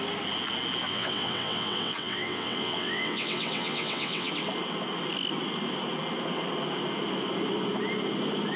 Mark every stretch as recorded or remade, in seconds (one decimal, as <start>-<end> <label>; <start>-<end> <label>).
0.0-0.8 recorded; 0.8-4.3 remade; 4.3-8.6 recorded